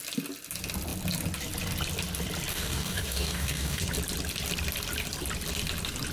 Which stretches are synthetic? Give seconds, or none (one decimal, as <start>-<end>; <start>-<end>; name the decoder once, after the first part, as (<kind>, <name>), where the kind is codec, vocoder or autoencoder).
2.5-3.8 (codec, DAC)